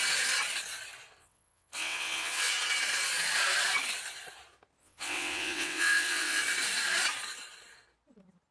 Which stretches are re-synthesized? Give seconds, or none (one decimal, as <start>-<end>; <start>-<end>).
1.2-2.5; 4.8-6.4